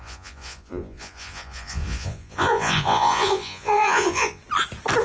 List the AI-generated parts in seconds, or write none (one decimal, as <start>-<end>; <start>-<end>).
0.0-4.4

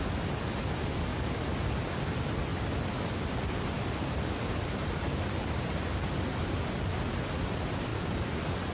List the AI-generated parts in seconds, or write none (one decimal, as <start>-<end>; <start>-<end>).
2.5-5.6; 7.9-8.7

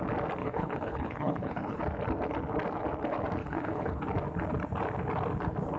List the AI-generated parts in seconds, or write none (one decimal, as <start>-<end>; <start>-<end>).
0.4-1.8; 3.4-4.0

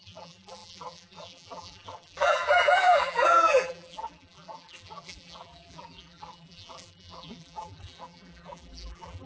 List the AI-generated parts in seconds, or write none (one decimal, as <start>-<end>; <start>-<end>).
0.0-9.3

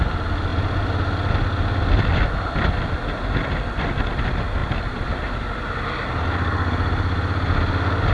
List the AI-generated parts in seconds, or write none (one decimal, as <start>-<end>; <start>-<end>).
none